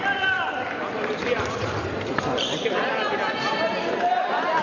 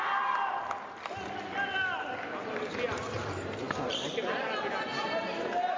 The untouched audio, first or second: second